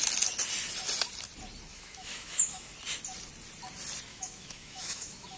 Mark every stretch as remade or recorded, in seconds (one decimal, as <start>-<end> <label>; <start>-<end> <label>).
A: 0.0-1.7 recorded; 1.7-2.7 remade; 2.7-4.1 recorded; 4.1-5.4 remade